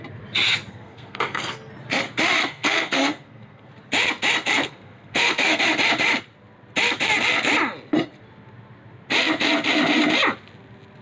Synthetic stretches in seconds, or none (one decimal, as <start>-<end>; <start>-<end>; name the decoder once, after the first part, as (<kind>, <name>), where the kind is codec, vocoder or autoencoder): 0.7-1.7 (codec, SNAC); 2.4-3.7; 4.6-5.6